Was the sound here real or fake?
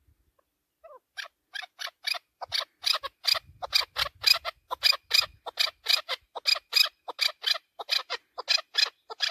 real